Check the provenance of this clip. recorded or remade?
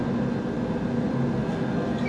recorded